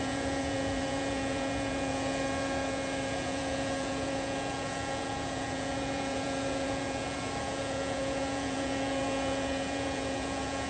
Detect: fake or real fake